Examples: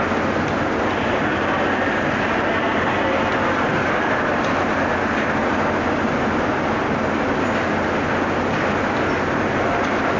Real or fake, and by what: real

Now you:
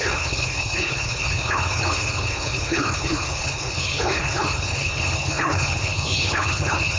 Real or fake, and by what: fake, codec, HILCodec